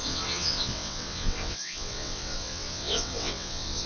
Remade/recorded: remade